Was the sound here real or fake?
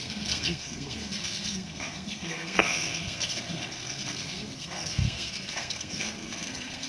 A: fake